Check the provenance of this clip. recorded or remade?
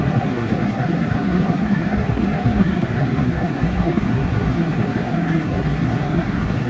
remade